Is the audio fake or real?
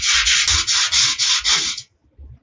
real